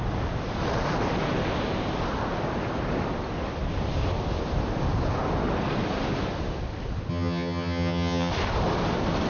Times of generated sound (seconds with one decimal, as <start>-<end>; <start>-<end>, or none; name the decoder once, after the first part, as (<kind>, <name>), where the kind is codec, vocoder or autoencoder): 7.1-8.3 (vocoder, HiFi-GAN)